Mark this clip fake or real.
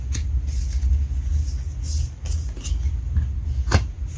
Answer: real